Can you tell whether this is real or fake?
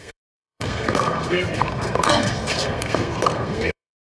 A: fake